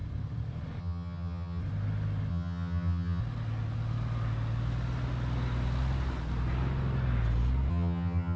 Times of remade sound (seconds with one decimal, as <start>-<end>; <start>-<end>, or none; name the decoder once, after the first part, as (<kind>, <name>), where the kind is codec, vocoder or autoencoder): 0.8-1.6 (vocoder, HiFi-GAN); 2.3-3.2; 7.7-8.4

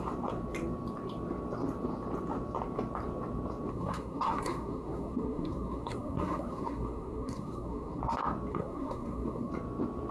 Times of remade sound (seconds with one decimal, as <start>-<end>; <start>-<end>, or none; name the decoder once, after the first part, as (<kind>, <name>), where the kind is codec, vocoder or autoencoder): 3.7-8.0 (codec, SNAC); 8.5-9.5

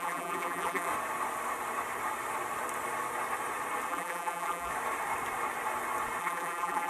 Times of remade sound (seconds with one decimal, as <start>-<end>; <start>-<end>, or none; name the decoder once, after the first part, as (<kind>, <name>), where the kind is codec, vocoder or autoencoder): 0.0-0.9 (vocoder, BigVGAN v2); 3.9-4.7; 6.2-6.9

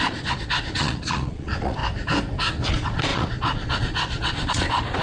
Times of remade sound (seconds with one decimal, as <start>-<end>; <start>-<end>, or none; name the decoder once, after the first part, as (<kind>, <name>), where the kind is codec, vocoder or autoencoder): 0.0-1.8 (vocoder, Vocos); 2.7-5.0